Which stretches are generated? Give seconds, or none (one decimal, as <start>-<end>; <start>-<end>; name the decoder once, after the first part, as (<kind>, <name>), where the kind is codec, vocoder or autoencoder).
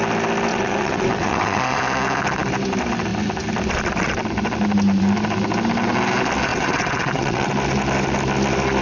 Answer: 0.5-1.8 (vocoder, WaveNeXt); 6.5-7.5